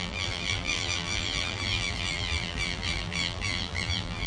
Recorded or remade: remade